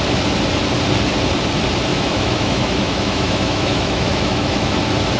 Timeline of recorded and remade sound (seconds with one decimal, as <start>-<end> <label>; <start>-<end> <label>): 0.0-1.9 recorded; 1.9-4.7 remade; 4.7-5.2 recorded